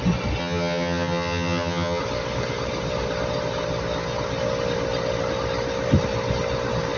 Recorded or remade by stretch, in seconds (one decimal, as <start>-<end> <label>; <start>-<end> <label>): 0.0-0.4 recorded; 0.4-2.0 remade; 2.0-7.0 recorded